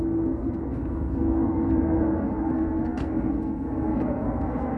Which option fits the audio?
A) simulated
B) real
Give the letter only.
A